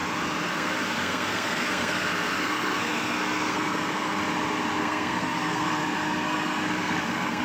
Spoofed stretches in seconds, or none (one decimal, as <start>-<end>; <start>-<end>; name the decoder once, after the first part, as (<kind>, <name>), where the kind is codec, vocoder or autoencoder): 0.5-4.2 (codec, SNAC); 4.8-7.4